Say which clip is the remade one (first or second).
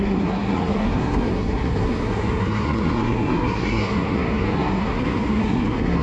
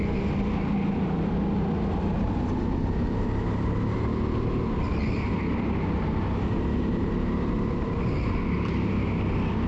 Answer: first